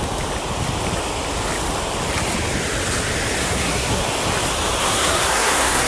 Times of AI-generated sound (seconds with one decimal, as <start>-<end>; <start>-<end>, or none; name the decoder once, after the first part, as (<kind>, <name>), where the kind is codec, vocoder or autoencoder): 3.4-4.0 (codec, SNAC); 4.8-5.9